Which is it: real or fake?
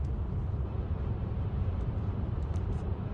fake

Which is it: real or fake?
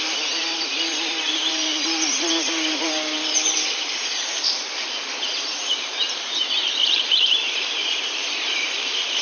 fake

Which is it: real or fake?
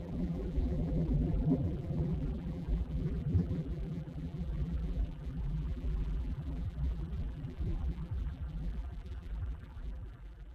fake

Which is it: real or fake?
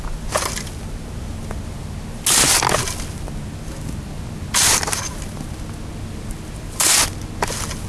real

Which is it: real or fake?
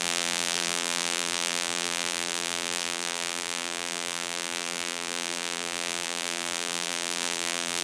fake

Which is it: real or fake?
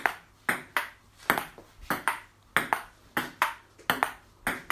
real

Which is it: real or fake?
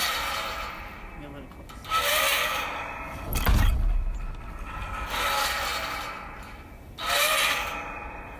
real